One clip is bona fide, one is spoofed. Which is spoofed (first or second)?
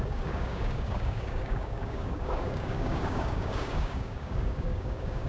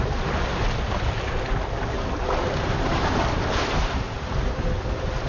first